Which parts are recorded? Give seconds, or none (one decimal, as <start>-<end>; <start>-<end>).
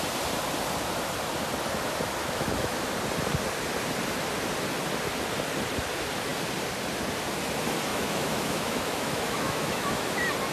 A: 0.0-2.2; 2.8-7.9; 10.1-10.5